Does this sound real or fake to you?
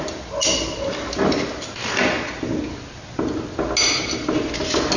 real